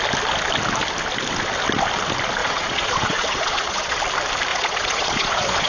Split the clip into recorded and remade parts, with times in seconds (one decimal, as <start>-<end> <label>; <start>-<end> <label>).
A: 0.0-2.4 recorded; 2.4-4.0 remade; 4.0-4.5 recorded; 4.5-5.7 remade